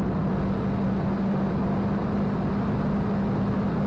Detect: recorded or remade recorded